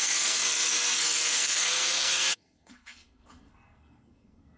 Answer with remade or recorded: remade